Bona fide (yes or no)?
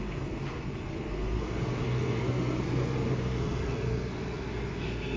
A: no